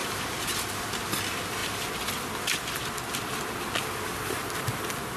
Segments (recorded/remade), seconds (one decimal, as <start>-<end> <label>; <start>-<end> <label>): 0.0-0.7 remade; 0.7-5.2 recorded